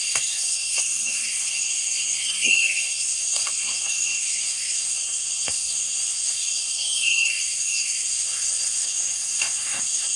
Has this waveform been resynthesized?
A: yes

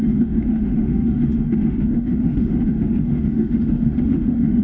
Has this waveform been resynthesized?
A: yes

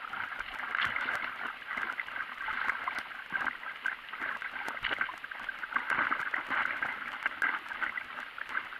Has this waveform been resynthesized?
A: no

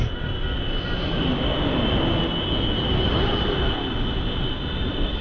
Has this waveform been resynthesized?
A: no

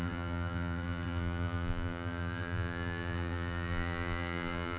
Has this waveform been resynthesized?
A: yes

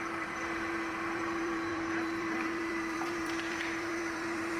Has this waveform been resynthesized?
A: yes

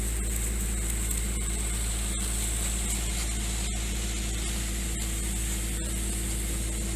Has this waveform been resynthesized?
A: yes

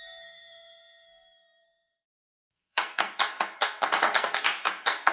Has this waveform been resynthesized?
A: yes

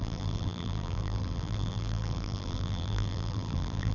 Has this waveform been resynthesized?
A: yes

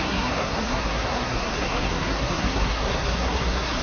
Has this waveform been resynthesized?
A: yes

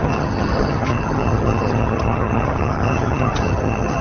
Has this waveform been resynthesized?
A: yes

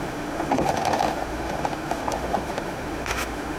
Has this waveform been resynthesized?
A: yes